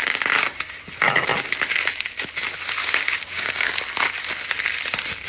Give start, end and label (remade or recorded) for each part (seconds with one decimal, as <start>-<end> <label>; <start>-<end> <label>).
0.0-2.8 recorded; 2.8-3.7 remade; 3.7-5.3 recorded